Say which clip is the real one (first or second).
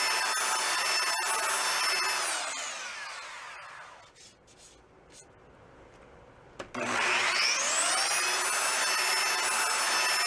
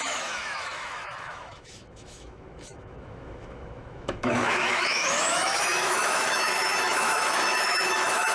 first